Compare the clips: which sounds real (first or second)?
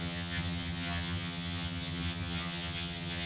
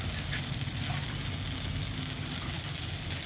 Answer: second